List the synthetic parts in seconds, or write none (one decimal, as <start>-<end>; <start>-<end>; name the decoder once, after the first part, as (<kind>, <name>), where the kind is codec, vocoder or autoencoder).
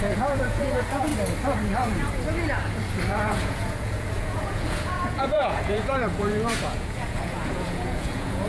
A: 0.0-1.1 (vocoder, Vocos); 3.2-8.5